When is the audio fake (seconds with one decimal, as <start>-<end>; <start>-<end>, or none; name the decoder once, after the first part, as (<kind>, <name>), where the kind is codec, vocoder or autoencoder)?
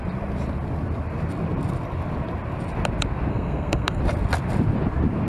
3.3-4.0 (codec, SNAC)